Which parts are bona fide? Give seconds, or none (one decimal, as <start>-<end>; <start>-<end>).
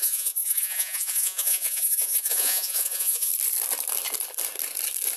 3.3-5.2